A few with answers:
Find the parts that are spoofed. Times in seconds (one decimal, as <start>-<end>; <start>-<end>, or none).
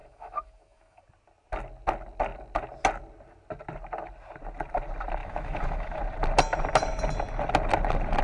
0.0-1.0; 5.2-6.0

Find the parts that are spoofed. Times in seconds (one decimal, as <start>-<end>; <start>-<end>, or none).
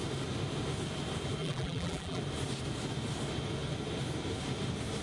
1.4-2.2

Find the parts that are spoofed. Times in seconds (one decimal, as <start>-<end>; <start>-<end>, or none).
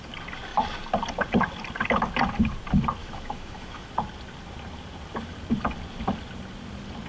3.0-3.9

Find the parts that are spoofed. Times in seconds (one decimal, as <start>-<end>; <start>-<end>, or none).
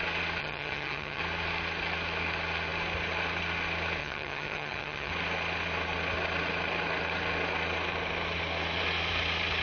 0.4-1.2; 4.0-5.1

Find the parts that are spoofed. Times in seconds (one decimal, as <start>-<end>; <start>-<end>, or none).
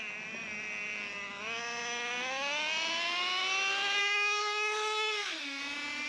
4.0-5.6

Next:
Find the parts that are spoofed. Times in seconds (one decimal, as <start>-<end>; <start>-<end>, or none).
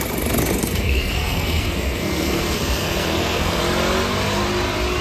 0.6-3.6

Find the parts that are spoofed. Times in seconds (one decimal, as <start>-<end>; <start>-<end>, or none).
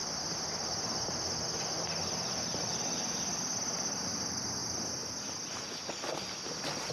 none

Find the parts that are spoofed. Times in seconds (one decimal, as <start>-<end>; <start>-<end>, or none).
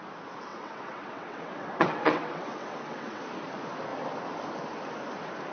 0.5-3.2